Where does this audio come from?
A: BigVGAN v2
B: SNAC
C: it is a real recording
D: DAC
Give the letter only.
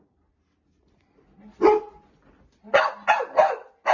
C